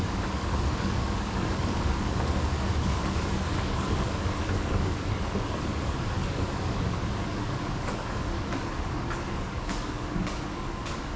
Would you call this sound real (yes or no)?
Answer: no